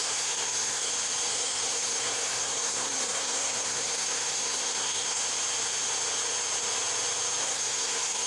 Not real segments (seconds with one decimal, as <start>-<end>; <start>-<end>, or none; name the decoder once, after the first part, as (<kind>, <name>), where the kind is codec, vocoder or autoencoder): 0.0-0.9 (codec, SNAC); 1.3-5.2; 7.4-8.3